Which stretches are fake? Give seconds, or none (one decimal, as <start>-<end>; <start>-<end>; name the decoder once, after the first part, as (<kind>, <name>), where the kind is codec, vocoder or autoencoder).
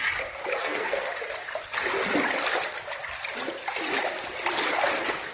0.6-1.1 (codec, SNAC)